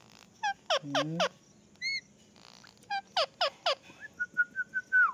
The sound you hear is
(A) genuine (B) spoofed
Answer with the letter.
A